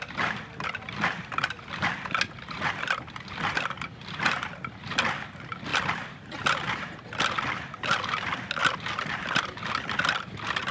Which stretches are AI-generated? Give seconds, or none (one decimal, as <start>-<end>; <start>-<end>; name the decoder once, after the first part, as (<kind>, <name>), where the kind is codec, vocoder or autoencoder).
none